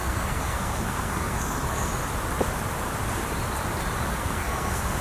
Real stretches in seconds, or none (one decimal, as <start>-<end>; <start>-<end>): 1.9-4.1